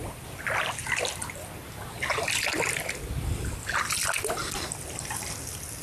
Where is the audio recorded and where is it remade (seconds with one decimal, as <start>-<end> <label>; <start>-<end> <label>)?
0.0-5.8 recorded